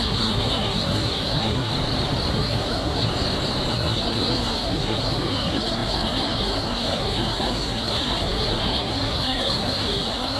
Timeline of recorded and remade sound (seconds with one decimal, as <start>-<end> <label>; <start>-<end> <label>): 0.0-1.7 remade; 1.7-2.3 recorded; 2.3-3.1 remade; 3.1-3.7 recorded; 3.7-10.4 remade